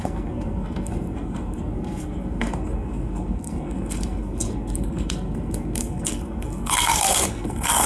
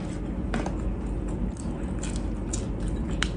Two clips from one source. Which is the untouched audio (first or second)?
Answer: second